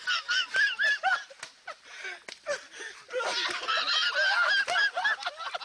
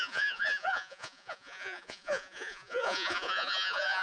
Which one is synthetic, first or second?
second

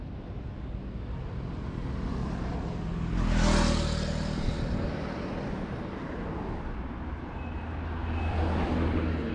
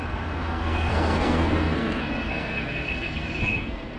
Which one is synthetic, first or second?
second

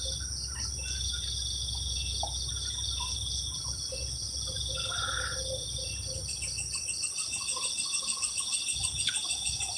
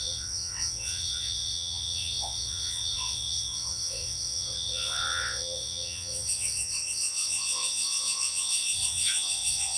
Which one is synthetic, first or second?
second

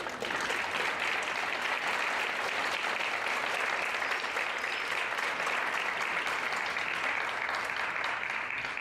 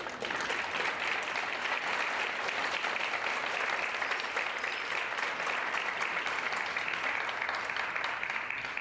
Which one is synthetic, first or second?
second